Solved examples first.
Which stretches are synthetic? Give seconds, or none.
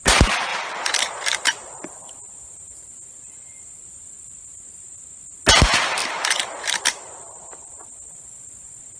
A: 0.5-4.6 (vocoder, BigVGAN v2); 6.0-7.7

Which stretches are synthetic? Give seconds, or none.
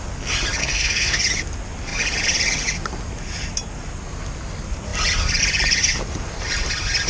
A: 0.6-1.2 (codec, SNAC)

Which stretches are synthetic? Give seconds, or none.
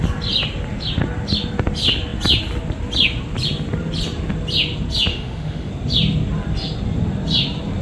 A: 5.1-5.7 (autoencoder, DAC-VAE)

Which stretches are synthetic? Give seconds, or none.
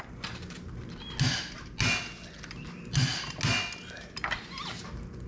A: none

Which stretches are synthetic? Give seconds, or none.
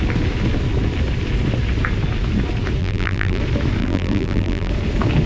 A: 2.8-3.4 (vocoder, BigVGAN v2); 3.8-4.7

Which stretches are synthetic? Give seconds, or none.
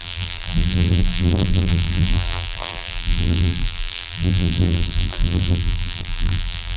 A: 0.0-6.8 (vocoder, BigVGAN v2)